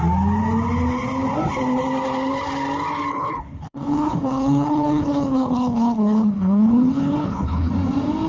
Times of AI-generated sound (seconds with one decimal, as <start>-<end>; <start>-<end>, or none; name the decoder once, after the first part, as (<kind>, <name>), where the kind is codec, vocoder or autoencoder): 3.1-7.7 (codec, HILCodec)